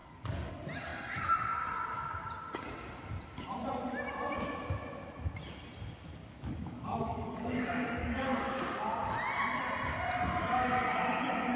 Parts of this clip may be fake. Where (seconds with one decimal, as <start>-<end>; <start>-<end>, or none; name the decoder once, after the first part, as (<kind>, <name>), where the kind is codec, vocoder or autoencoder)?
0.0-0.5 (codec, DAC); 6.2-8.8